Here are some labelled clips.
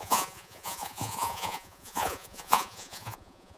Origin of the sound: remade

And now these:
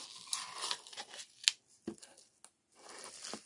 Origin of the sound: recorded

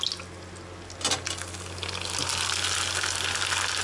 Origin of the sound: recorded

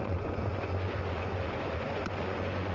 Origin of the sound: remade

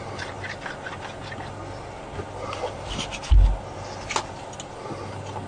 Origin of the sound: recorded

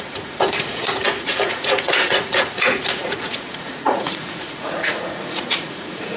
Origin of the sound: remade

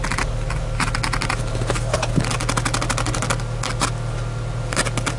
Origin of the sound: recorded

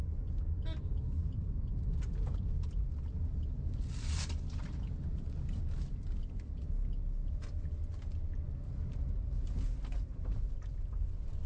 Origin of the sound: recorded